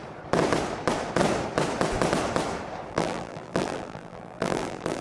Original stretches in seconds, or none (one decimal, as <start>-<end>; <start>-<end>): 0.0-2.9